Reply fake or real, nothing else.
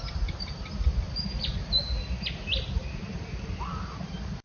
real